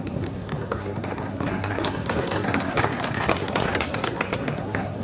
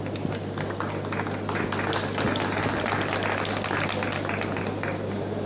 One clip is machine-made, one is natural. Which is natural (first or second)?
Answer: second